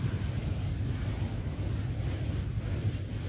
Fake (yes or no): no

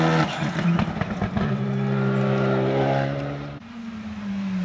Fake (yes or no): no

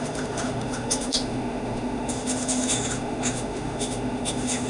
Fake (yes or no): yes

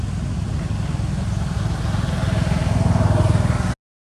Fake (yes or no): no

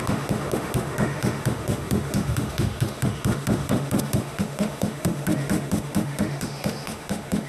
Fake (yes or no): yes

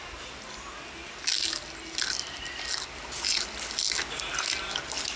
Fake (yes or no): no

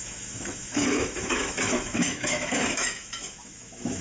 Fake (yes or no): yes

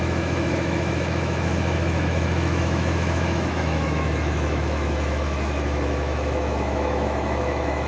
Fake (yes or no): yes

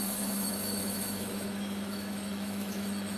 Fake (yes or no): yes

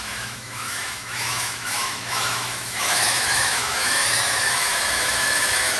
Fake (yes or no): yes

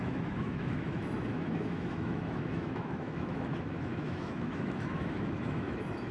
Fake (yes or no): yes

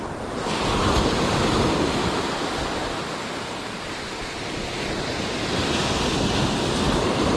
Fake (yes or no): no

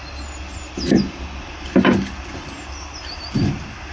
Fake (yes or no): no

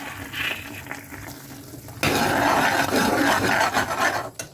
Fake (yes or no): no